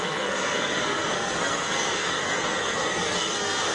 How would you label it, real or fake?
fake